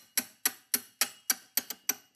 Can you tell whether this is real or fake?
real